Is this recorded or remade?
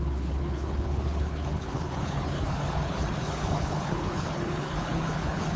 remade